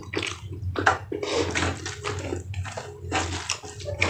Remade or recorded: recorded